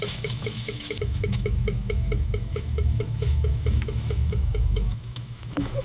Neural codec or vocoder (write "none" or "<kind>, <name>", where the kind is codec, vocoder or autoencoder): autoencoder, DAC-VAE